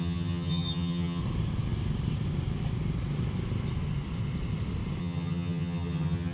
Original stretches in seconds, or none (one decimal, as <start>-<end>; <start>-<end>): 1.2-5.0